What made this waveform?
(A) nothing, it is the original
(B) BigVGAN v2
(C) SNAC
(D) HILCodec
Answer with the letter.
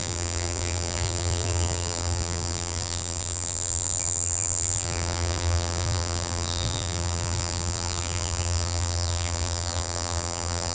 B